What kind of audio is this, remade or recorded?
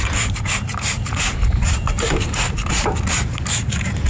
remade